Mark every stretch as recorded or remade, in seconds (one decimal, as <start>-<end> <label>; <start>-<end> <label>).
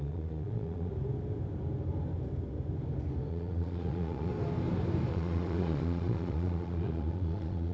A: 0.0-0.9 remade; 0.9-3.3 recorded; 3.3-4.3 remade; 4.3-5.1 recorded; 5.1-7.7 remade